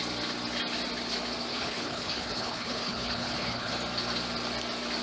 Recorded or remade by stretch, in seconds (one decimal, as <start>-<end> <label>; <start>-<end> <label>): 0.0-1.5 recorded; 1.5-3.7 remade; 3.7-5.0 recorded